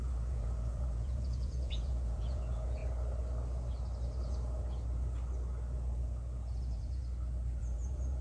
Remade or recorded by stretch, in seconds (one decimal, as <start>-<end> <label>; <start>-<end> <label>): 0.0-2.8 remade; 2.8-6.6 recorded; 6.6-7.0 remade; 7.0-7.6 recorded; 7.6-8.2 remade